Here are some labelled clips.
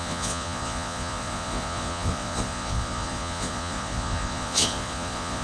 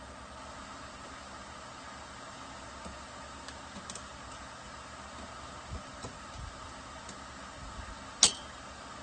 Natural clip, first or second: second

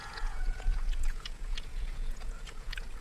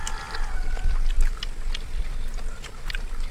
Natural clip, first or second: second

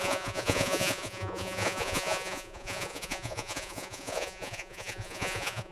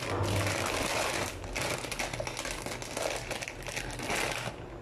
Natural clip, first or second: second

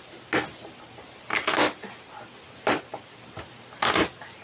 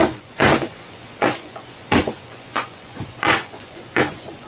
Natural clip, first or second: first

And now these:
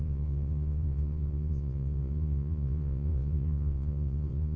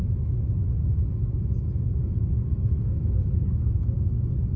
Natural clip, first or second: second